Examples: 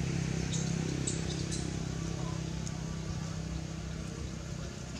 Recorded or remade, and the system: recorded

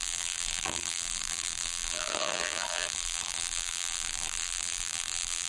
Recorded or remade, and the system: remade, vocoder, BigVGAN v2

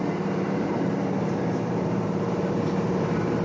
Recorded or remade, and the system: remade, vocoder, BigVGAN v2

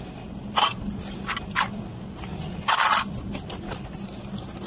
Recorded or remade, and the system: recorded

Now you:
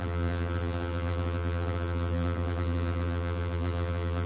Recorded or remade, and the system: remade, vocoder, BigVGAN v2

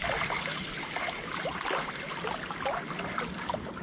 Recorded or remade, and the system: recorded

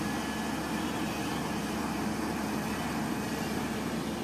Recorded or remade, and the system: recorded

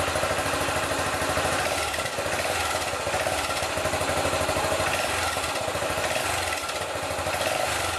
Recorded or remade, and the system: recorded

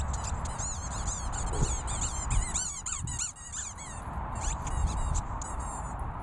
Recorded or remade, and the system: recorded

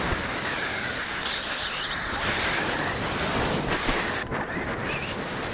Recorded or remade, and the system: remade, vocoder, BigVGAN v2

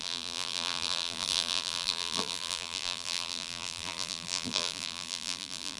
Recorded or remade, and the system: remade, vocoder, BigVGAN v2